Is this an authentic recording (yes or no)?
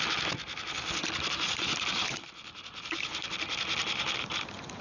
yes